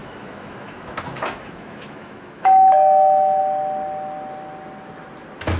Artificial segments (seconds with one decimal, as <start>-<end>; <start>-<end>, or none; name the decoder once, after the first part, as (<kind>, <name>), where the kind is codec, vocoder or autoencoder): 0.0-3.4 (autoencoder, DAC-VAE)